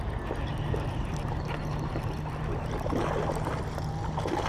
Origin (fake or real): real